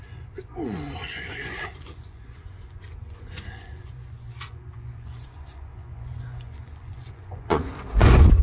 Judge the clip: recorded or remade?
remade